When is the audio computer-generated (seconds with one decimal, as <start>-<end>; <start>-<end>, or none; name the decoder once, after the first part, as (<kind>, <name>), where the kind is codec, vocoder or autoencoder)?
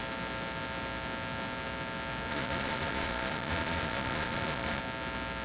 2.3-4.8 (vocoder, Vocos)